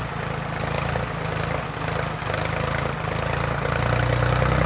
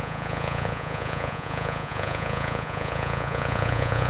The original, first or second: first